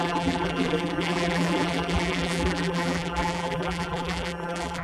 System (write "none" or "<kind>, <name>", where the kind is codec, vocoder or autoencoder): vocoder, BigVGAN v2